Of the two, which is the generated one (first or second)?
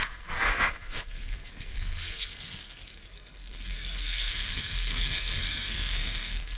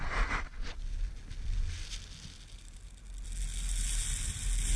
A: first